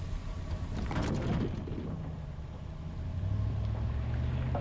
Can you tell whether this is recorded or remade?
recorded